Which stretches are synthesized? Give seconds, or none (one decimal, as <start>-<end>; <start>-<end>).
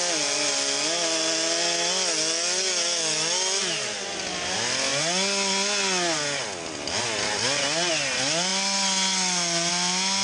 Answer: none